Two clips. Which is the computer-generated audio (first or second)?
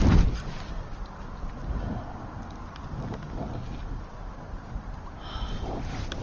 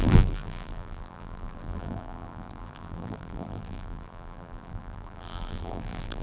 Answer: second